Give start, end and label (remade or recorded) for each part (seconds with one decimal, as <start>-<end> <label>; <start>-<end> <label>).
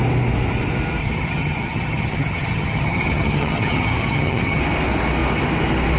0.0-1.0 recorded; 1.0-4.6 remade; 4.6-6.0 recorded